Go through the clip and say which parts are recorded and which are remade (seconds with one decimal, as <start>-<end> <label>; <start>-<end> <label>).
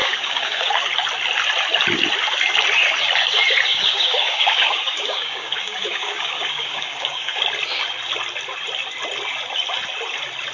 0.0-0.7 remade; 0.7-3.7 recorded; 3.7-7.4 remade; 7.4-10.5 recorded